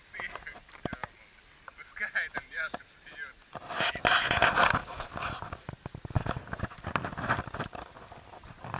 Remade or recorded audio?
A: recorded